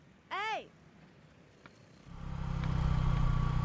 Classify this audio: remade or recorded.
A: recorded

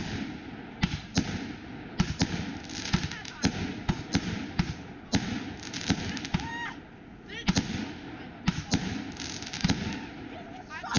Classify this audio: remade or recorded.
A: recorded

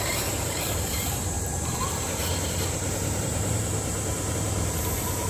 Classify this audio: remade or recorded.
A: remade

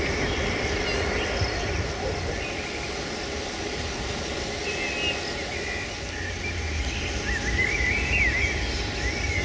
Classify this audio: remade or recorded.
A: recorded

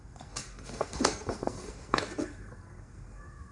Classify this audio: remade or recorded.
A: remade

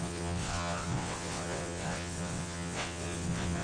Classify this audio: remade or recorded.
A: remade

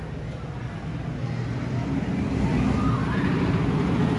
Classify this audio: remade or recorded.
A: recorded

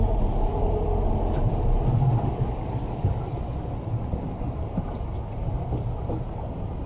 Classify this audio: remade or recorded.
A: recorded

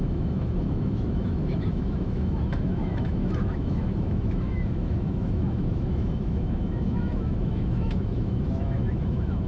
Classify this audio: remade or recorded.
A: remade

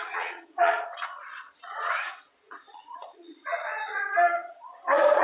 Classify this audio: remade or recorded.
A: remade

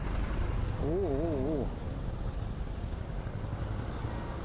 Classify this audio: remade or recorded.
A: recorded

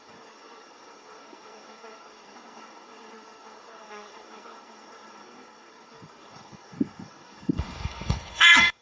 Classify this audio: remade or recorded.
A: remade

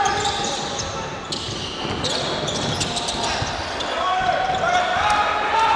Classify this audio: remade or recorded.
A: recorded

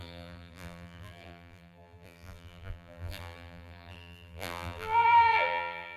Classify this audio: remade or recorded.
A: remade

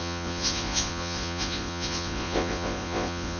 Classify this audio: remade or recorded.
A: remade